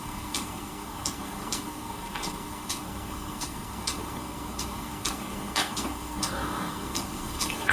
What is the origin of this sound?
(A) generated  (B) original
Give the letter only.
A